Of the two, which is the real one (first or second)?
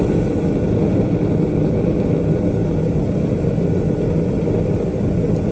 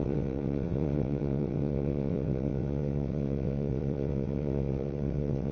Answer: first